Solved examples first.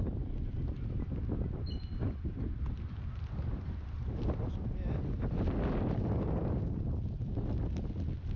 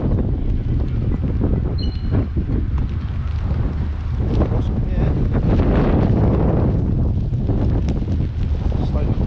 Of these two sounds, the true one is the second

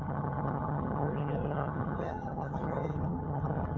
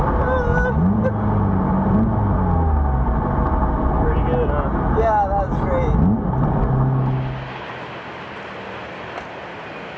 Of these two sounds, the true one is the second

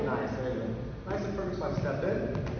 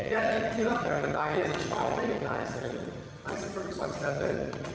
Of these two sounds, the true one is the first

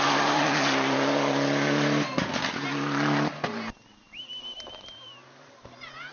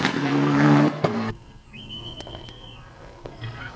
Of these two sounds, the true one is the first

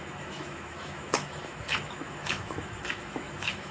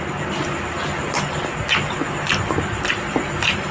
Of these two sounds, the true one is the second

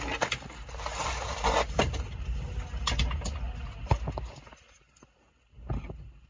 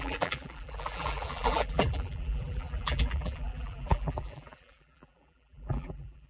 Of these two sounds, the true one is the first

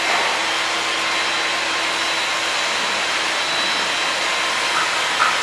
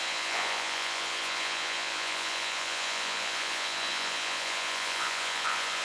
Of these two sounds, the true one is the first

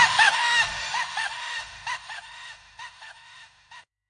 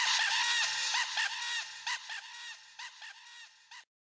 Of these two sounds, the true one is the second